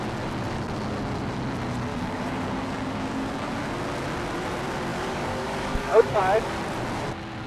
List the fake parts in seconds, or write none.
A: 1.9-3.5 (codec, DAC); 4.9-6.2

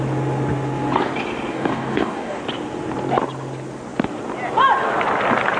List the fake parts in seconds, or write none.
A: 1.5-2.4 (codec, DAC)

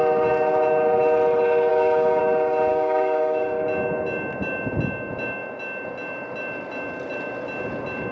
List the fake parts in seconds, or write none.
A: 1.7-2.2 (codec, DAC); 2.7-3.6

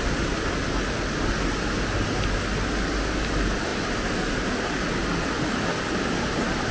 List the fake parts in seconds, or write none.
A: none

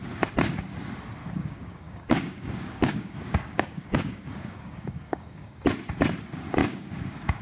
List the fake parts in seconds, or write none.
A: 1.2-5.6 (codec, DAC); 6.6-7.4

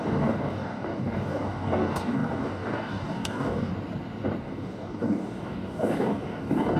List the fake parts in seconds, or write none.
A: 0.0-3.7 (codec, DAC); 4.4-6.8